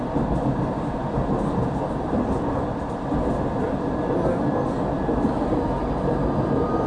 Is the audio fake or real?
real